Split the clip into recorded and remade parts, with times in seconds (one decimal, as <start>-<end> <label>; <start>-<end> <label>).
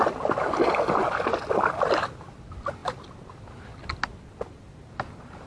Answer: 0.0-5.5 recorded